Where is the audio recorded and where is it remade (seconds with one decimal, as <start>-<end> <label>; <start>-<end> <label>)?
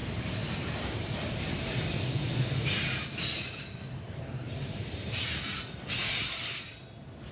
0.0-1.4 remade; 1.4-2.3 recorded; 2.3-5.6 remade; 5.6-7.3 recorded